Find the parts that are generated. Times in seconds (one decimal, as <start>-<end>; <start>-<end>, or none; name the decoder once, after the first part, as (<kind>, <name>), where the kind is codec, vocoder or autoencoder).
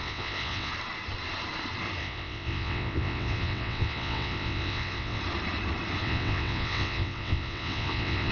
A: 0.0-0.7 (vocoder, WaveNeXt); 2.0-5.2; 6.0-8.3